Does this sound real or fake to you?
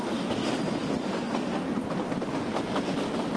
real